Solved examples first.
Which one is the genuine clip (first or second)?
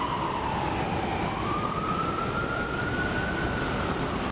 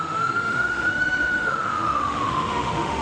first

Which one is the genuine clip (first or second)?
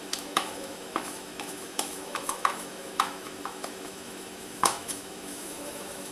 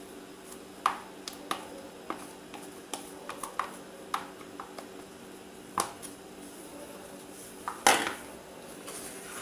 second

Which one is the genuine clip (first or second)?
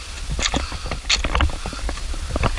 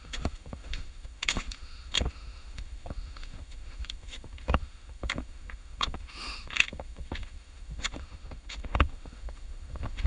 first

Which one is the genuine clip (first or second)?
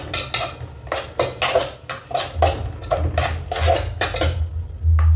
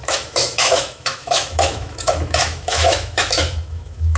first